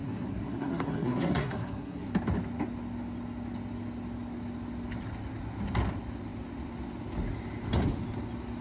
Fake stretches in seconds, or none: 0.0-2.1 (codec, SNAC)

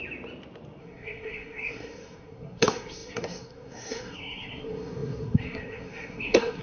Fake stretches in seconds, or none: 0.8-6.6 (codec, SNAC)

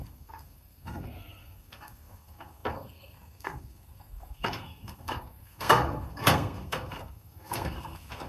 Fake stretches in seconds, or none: 0.0-8.3 (codec, SNAC)

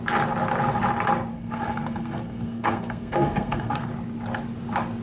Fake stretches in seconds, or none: 1.3-3.9 (codec, SNAC)

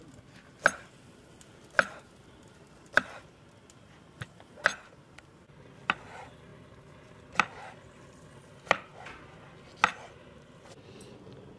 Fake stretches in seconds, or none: none

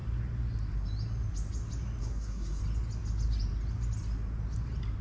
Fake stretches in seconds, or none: 2.0-2.6 (codec, SNAC)